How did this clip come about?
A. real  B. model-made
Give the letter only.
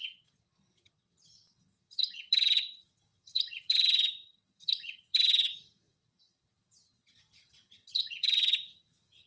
B